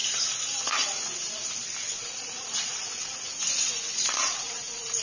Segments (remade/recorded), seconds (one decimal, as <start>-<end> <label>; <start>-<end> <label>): 0.0-1.3 remade; 1.3-1.9 recorded; 1.9-5.0 remade